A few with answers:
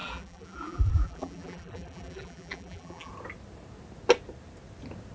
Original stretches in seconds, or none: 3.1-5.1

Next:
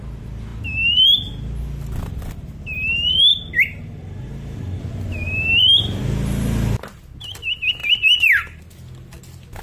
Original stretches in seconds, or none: 0.0-3.3; 4.8-7.8; 8.6-9.6

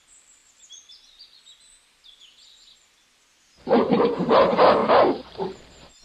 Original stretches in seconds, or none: 0.4-3.9

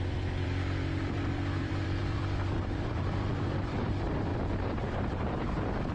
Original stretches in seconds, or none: 4.3-4.8

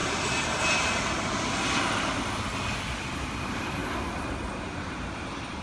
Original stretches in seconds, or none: 0.0-3.4; 3.8-4.7

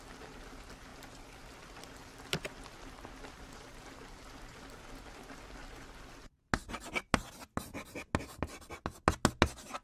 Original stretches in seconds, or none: 0.0-9.8